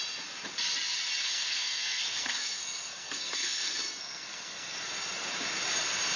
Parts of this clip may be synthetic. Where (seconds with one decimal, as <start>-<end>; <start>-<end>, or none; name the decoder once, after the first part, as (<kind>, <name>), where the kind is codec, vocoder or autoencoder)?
1.2-4.9 (codec, SNAC)